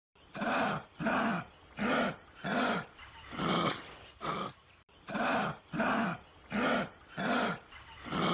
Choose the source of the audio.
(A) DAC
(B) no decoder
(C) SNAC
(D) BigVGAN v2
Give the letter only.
B